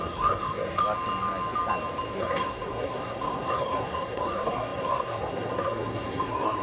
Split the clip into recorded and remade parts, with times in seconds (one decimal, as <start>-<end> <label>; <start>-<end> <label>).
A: 0.0-0.8 remade; 0.8-2.2 recorded; 2.2-6.6 remade